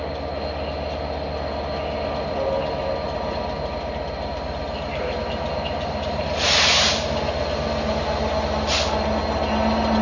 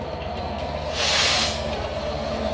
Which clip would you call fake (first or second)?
second